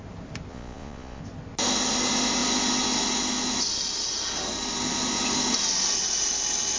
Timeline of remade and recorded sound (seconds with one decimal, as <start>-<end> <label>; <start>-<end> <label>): 0.0-0.5 recorded; 0.5-1.2 remade; 1.2-6.8 recorded